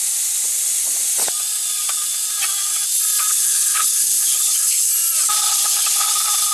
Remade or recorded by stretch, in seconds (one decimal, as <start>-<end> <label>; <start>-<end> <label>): 0.0-3.3 recorded; 3.3-4.9 remade; 4.9-5.5 recorded; 5.5-6.1 remade; 6.1-6.5 recorded